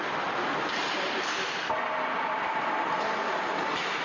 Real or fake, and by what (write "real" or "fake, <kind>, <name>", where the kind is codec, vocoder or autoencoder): real